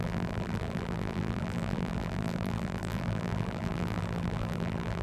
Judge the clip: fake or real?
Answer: fake